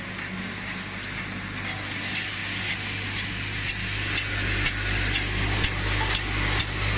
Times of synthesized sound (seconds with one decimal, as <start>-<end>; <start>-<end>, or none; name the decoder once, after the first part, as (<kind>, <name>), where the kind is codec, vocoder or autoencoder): none